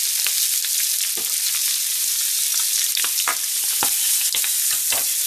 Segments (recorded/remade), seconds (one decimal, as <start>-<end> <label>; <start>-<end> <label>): 0.0-1.6 recorded; 1.6-2.1 remade; 2.1-2.5 recorded; 2.5-4.1 remade; 4.1-5.3 recorded